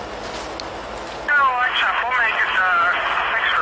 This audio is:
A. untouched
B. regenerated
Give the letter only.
A